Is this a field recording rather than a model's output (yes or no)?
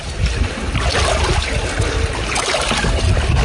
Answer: yes